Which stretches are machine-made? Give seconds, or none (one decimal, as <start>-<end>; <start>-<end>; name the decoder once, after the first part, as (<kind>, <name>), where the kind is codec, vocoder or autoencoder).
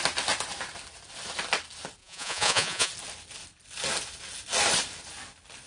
2.0-2.9 (vocoder, Vocos)